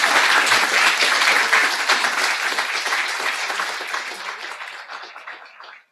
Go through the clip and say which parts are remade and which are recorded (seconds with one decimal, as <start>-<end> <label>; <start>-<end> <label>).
0.0-5.9 recorded